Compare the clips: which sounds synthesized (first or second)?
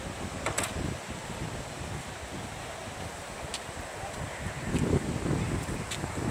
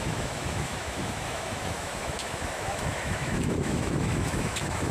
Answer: second